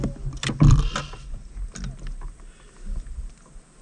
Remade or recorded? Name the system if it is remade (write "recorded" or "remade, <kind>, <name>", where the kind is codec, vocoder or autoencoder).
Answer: recorded